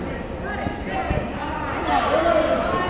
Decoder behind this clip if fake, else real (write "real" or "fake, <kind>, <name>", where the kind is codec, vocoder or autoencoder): real